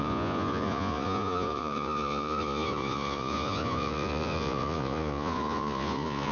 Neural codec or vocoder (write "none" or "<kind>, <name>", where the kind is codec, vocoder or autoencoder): vocoder, Vocos